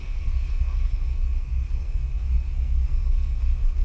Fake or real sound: fake